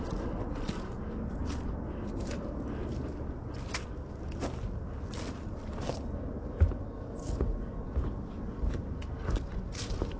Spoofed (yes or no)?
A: no